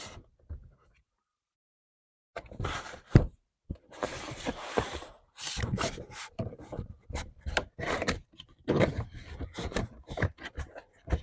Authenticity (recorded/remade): remade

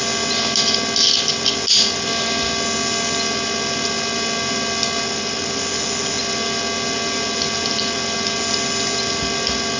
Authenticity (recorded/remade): recorded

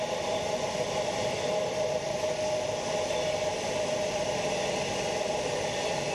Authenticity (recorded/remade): recorded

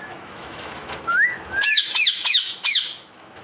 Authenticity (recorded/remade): remade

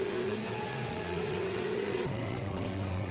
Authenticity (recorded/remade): remade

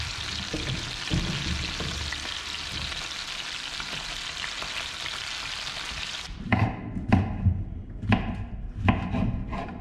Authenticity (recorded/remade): recorded